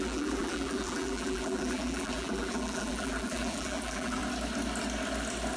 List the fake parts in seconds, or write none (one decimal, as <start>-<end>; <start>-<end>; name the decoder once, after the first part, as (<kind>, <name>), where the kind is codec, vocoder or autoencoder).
0.0-4.2 (vocoder, BigVGAN v2)